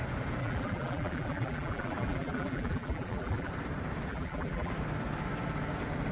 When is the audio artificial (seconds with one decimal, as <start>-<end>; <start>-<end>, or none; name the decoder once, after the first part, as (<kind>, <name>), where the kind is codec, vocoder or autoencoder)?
0.4-3.5 (vocoder, BigVGAN v2); 4.1-4.7